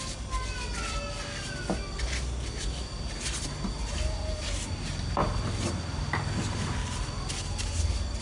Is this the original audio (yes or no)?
yes